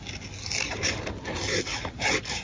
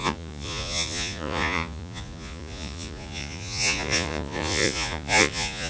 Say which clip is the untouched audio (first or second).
first